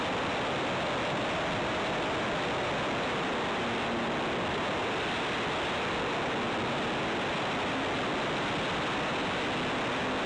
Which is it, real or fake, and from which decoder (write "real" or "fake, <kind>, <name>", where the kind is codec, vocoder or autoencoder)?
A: real